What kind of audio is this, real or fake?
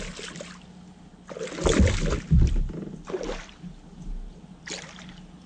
real